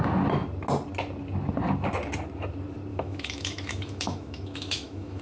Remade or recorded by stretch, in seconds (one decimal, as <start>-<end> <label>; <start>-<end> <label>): 0.0-2.9 recorded; 2.9-5.2 remade